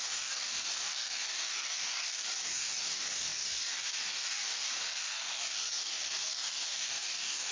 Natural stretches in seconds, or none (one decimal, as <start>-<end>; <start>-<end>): none